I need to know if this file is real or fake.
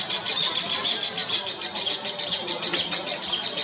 real